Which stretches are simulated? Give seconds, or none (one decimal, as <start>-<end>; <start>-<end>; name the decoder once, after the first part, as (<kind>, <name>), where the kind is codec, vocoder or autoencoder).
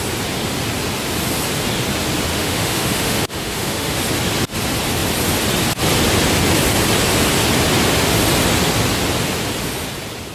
2.3-4.0 (autoencoder, DAC-VAE)